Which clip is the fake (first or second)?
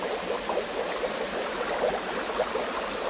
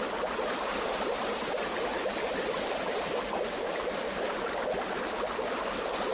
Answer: second